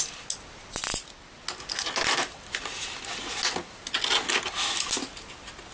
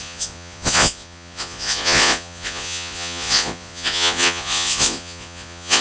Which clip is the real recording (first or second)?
first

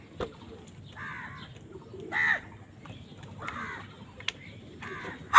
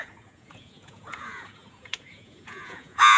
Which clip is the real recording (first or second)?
first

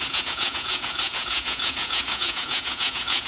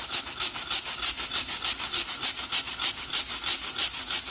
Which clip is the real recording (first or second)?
second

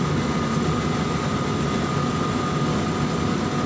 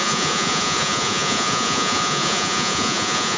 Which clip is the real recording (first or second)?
first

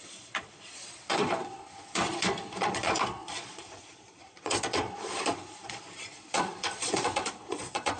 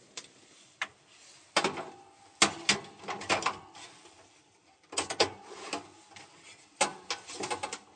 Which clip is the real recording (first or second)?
second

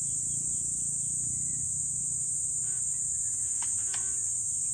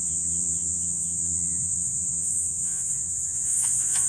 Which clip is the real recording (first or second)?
first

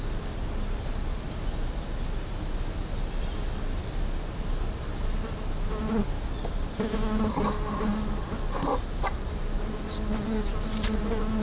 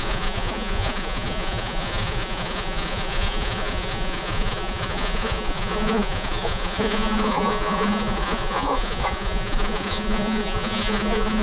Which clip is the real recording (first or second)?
first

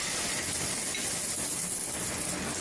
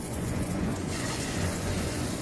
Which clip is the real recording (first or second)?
first